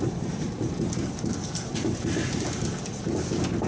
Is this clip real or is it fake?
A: real